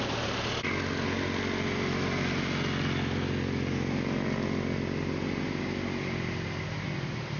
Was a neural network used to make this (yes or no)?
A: no